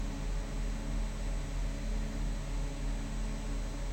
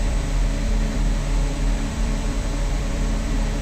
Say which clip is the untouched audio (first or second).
first